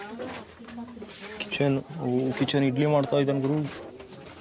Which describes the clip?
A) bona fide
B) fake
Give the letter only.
A